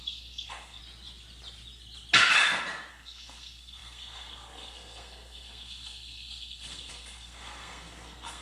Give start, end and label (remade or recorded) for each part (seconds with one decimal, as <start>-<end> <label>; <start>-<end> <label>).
0.0-0.8 remade; 0.8-2.9 recorded; 2.9-8.4 remade